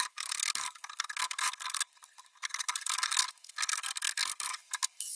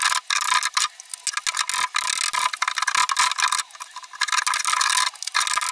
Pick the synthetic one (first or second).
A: first